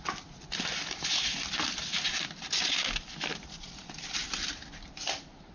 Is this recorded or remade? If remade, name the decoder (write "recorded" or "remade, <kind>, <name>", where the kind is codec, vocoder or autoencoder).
recorded